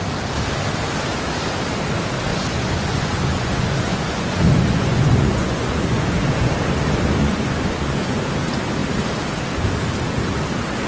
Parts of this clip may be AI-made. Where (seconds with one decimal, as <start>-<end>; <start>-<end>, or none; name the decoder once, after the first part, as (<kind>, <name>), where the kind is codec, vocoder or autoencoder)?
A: 2.3-6.5 (vocoder, Vocos); 7.2-8.3